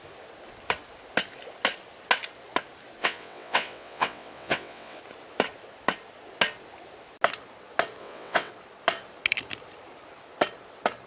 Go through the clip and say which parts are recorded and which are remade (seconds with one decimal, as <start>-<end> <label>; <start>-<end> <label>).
0.0-3.0 recorded; 3.0-5.0 remade; 5.0-8.0 recorded; 8.0-8.5 remade; 8.5-11.1 recorded